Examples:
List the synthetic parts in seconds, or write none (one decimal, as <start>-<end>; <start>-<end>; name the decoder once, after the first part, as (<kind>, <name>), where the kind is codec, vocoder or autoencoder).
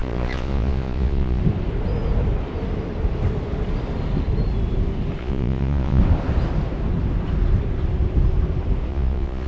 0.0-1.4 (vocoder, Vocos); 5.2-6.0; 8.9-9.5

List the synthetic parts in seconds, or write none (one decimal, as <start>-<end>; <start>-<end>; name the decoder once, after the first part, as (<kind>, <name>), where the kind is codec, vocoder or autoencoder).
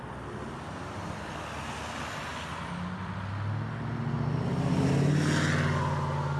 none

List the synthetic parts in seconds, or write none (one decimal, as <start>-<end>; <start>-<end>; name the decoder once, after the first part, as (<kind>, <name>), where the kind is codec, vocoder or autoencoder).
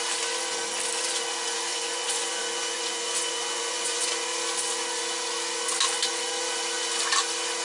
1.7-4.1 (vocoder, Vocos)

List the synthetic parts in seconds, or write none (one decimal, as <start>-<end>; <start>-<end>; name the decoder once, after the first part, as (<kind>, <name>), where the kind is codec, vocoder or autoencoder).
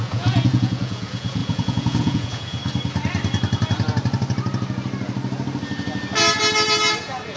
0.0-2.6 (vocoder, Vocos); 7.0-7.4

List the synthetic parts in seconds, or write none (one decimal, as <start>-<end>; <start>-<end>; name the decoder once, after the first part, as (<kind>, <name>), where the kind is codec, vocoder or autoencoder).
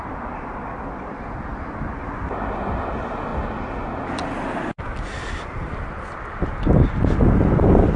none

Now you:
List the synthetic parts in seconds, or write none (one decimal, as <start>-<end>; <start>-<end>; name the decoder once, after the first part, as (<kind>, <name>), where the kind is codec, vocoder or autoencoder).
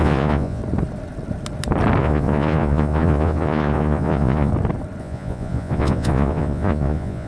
0.0-0.6 (vocoder, Vocos); 2.0-4.5; 5.0-7.3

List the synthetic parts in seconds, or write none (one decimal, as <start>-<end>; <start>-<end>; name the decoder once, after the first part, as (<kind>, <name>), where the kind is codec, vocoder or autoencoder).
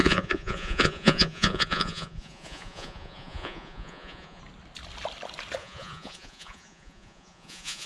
0.0-4.4 (vocoder, Vocos); 5.6-7.9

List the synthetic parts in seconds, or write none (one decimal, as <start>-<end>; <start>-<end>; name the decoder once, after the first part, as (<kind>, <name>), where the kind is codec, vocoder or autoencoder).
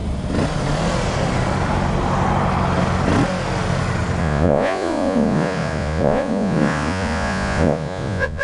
4.2-8.4 (vocoder, Vocos)